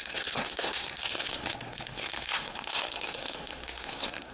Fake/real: fake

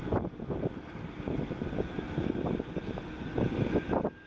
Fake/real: real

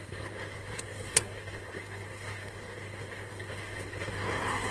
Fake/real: fake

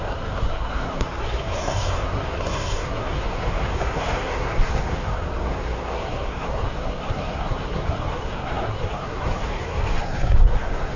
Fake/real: fake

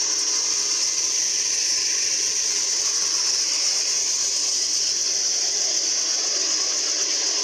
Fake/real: real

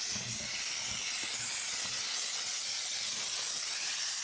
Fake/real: real